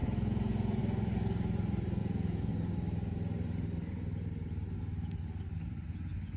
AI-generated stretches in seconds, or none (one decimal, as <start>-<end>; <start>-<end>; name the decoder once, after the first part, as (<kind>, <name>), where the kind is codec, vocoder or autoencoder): 0.0-0.8 (vocoder, Vocos); 2.0-2.5